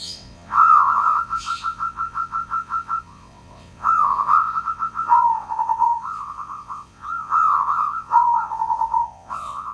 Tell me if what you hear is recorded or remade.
remade